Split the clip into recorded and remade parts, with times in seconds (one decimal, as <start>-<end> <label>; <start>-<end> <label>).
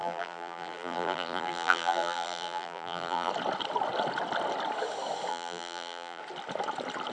0.0-3.3 remade; 3.3-5.3 recorded; 5.3-6.2 remade; 6.2-7.1 recorded